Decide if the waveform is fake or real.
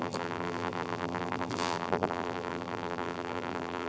fake